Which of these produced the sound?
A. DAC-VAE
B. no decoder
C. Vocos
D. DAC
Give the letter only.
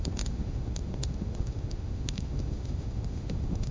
A